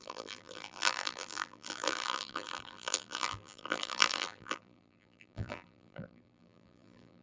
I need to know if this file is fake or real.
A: fake